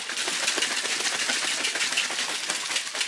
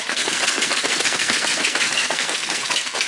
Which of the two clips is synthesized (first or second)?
second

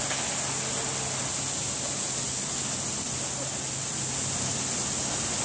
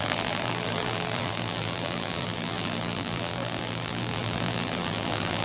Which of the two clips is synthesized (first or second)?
second